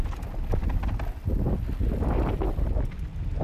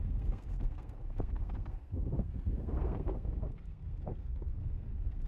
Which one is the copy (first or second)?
second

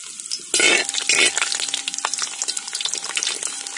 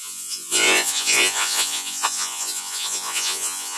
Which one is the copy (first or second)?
second